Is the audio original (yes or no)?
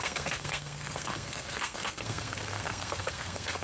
no